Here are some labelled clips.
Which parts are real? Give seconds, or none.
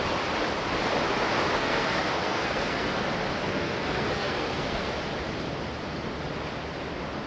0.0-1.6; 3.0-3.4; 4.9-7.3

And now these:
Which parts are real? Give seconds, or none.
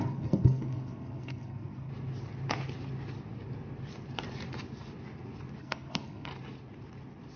1.9-5.6; 6.3-7.4